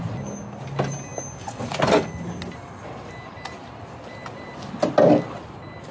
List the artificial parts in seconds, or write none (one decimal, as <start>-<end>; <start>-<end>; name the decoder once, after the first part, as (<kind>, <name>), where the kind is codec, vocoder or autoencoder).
none